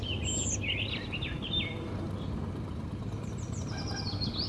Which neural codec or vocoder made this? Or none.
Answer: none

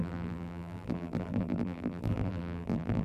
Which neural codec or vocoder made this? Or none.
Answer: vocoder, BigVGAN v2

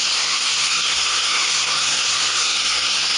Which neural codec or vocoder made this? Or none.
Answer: codec, SNAC